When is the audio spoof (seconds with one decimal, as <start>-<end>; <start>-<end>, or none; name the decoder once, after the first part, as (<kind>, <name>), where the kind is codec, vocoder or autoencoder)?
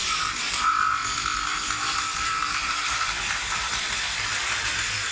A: 0.0-0.9 (vocoder, BigVGAN v2); 1.5-3.7